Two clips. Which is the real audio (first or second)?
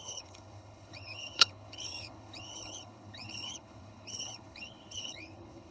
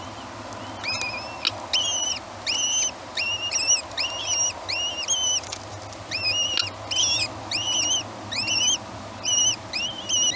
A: second